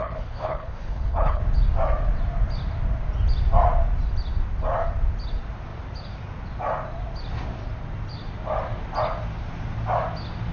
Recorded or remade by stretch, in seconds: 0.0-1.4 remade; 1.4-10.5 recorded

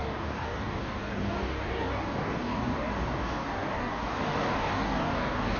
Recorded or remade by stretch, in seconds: 0.0-5.6 remade

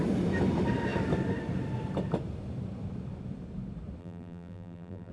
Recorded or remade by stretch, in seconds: 0.0-4.0 recorded; 4.0-5.1 remade

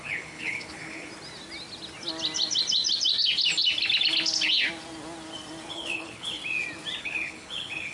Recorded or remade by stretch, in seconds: 0.0-1.1 remade; 1.1-5.7 recorded; 5.7-6.4 remade; 6.4-7.0 recorded; 7.0-7.9 remade